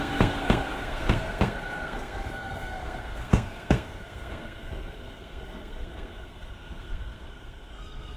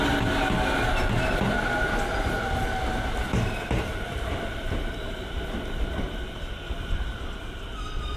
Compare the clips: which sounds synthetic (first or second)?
first